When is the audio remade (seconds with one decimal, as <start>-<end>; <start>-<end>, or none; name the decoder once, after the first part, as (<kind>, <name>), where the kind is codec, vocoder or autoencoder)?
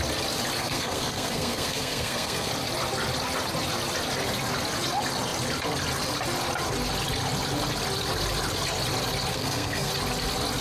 0.6-2.5 (codec, SNAC); 9.3-9.9